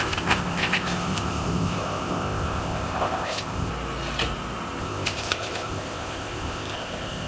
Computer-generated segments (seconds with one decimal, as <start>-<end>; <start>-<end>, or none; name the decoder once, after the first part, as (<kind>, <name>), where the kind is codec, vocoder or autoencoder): 0.0-3.7 (codec, ZipCodec); 4.8-7.3